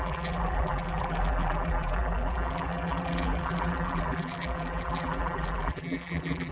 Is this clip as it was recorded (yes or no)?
no